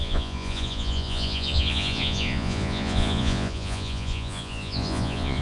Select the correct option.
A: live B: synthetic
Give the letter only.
B